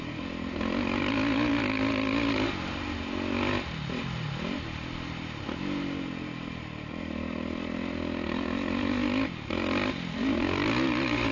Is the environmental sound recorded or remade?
recorded